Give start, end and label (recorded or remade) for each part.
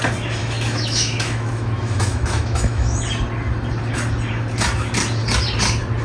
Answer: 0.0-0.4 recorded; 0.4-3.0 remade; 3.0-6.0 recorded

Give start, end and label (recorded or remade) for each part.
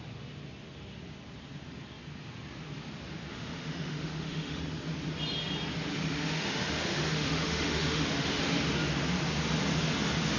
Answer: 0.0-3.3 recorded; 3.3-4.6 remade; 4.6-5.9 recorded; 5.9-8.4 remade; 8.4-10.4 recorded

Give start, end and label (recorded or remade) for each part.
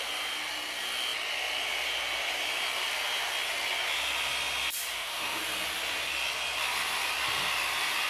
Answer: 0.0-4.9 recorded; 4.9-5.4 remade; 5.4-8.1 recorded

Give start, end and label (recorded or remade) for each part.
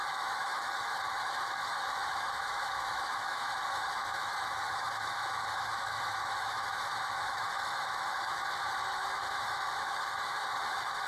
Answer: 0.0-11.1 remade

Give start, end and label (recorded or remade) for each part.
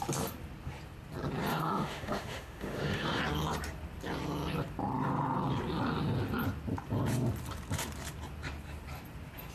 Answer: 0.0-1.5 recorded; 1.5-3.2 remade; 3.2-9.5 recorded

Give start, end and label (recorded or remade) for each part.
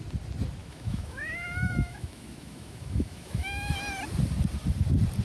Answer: 0.0-0.6 recorded; 0.6-3.7 remade; 3.7-5.2 recorded